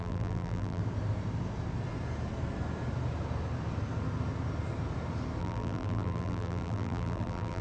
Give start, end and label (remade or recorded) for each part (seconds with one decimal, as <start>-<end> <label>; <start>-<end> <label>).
0.0-0.8 remade; 0.8-5.4 recorded; 5.4-7.6 remade